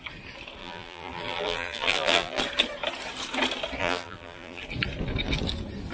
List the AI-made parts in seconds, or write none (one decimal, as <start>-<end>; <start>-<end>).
0.6-2.4; 3.8-4.6